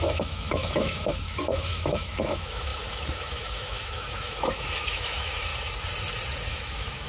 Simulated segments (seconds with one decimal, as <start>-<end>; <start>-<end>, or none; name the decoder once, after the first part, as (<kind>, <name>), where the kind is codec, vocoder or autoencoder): 0.0-5.5 (autoencoder, DAC-VAE); 6.5-7.1